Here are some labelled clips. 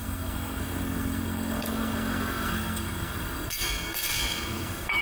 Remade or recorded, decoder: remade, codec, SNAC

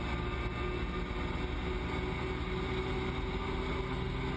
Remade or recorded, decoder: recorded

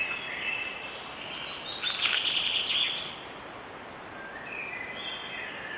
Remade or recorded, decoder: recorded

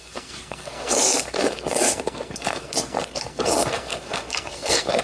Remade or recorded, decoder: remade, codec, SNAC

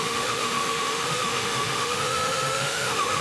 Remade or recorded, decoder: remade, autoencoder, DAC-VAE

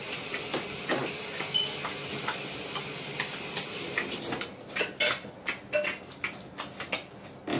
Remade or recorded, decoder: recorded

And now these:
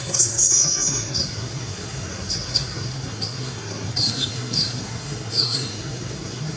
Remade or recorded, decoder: remade, codec, SNAC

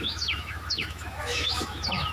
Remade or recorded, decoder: remade, autoencoder, DAC-VAE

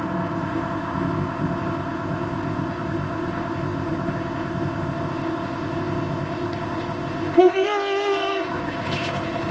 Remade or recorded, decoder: remade, codec, ZipCodec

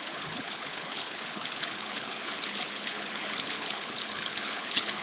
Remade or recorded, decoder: remade, codec, HILCodec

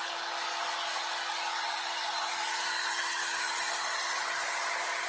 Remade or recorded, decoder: recorded